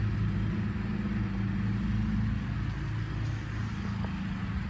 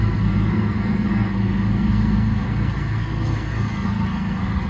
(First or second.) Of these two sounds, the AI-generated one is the second